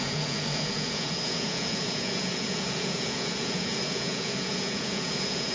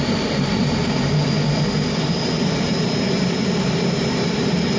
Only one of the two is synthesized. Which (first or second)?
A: first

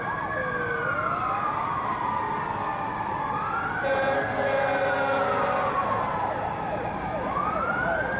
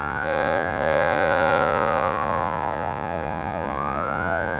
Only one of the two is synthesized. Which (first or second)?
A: second